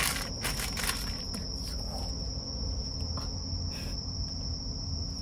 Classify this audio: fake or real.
real